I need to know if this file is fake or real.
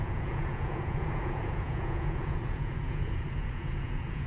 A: fake